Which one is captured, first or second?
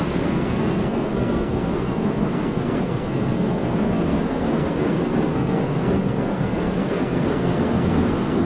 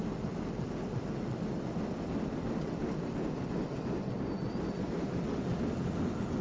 second